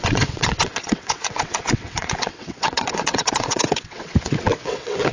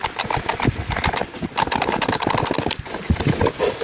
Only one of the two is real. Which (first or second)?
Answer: second